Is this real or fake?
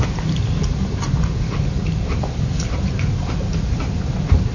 real